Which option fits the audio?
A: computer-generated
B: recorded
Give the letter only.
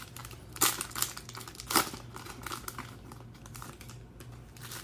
B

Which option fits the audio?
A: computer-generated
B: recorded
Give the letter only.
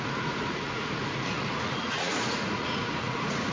A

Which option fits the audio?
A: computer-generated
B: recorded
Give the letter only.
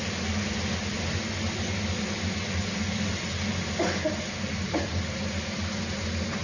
B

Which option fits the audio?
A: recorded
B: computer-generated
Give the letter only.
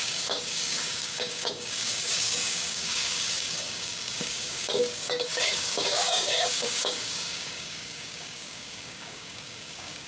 B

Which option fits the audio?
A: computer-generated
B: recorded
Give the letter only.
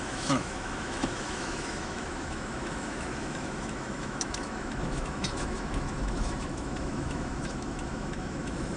A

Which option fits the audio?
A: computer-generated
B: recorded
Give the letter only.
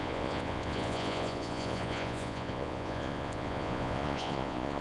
A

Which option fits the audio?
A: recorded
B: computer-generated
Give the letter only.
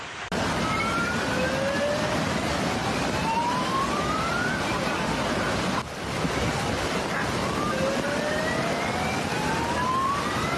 A